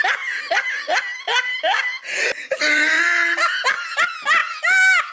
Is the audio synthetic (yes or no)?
no